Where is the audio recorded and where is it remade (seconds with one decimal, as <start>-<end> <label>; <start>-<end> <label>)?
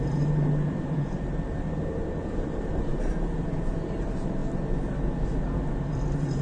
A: 0.0-4.4 remade; 4.4-5.7 recorded; 5.7-6.4 remade